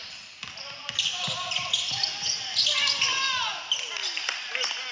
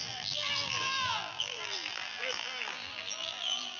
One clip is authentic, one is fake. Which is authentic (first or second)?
first